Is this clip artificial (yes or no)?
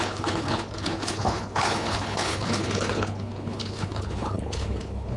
yes